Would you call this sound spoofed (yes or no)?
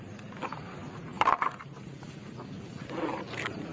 no